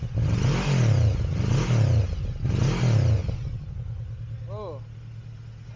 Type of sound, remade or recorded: recorded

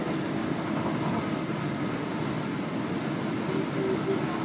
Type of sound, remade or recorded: recorded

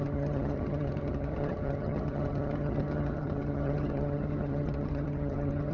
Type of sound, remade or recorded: remade